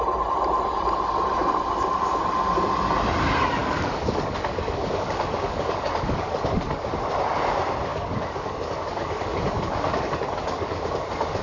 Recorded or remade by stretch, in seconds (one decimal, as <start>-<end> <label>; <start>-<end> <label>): 0.0-3.6 recorded; 3.6-6.9 remade; 6.9-7.9 recorded; 7.9-10.8 remade; 10.8-11.4 recorded